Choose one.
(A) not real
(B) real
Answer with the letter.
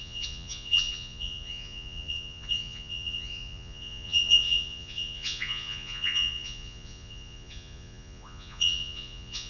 A